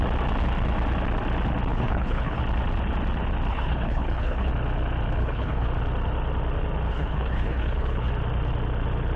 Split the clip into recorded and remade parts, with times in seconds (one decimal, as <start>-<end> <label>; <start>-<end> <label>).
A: 0.0-1.7 recorded; 1.7-2.4 remade; 2.4-3.5 recorded; 3.5-4.5 remade; 4.5-5.2 recorded; 5.2-5.7 remade; 5.7-6.9 recorded; 6.9-8.1 remade; 8.1-9.2 recorded

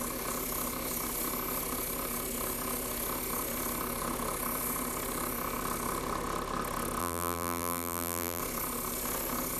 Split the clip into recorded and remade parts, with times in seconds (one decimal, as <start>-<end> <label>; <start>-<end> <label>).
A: 0.0-7.0 recorded; 7.0-8.4 remade; 8.4-9.6 recorded

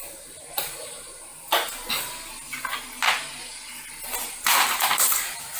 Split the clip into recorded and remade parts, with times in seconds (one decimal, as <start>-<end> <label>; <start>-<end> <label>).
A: 0.0-1.3 remade; 1.3-4.3 recorded; 4.3-5.6 remade

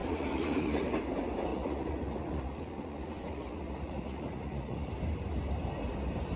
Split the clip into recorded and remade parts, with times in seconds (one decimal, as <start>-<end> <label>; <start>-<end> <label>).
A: 0.0-0.9 remade; 0.9-1.5 recorded; 1.5-4.9 remade; 4.9-6.4 recorded

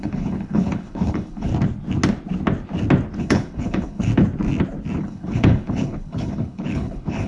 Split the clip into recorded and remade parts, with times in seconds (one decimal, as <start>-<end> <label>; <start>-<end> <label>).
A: 0.0-1.5 remade; 1.5-3.2 recorded; 3.2-4.1 remade; 4.1-5.0 recorded; 5.0-7.3 remade

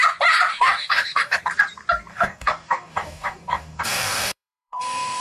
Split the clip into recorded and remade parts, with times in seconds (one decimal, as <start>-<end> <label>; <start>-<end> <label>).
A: 0.0-0.5 recorded; 0.5-1.4 remade; 1.4-2.1 recorded; 2.1-5.2 remade